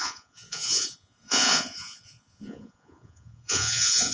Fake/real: fake